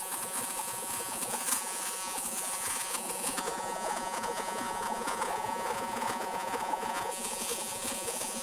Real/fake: fake